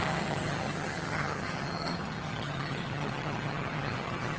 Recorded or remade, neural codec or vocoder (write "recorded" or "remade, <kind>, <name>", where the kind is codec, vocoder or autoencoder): remade, vocoder, HiFi-GAN